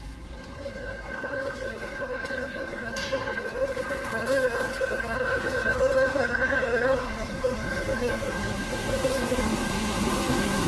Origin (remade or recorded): remade